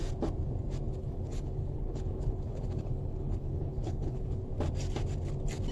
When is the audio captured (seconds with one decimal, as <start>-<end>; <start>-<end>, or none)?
0.0-1.0; 4.4-5.7